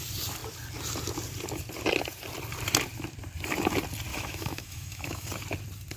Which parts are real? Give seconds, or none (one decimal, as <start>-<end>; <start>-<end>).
0.0-4.1; 5.3-6.0